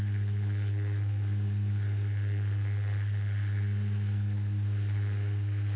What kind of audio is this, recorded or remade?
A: remade